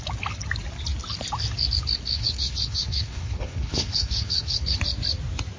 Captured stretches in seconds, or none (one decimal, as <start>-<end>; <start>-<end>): 0.0-2.1; 4.8-5.6